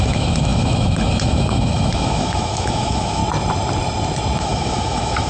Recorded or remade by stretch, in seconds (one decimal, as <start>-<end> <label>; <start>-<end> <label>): 0.0-3.2 remade; 3.2-4.4 recorded; 4.4-5.3 remade

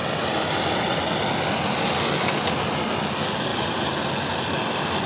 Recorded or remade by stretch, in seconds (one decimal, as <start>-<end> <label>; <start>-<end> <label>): 0.0-5.1 recorded

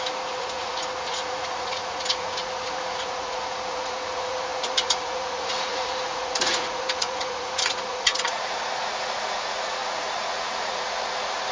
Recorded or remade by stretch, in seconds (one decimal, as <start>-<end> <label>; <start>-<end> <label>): 0.0-11.5 remade

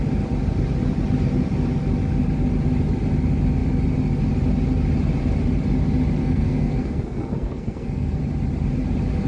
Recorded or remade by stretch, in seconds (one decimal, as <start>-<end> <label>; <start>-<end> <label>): 0.0-6.2 recorded; 6.2-8.2 remade; 8.2-9.3 recorded

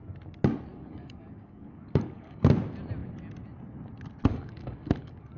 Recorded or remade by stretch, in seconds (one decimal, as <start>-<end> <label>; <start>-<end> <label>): 0.0-0.7 recorded; 0.7-2.4 remade; 2.4-4.3 recorded; 4.3-5.4 remade

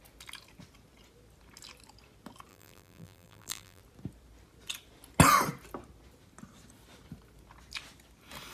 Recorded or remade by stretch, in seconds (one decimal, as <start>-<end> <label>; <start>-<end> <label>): 0.0-2.5 recorded; 2.5-3.8 remade; 3.8-8.5 recorded